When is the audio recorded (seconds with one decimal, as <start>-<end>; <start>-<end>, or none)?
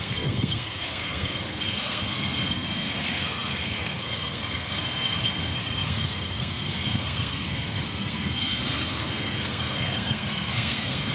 none